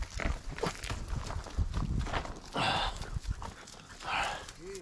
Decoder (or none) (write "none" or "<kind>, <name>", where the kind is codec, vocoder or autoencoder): none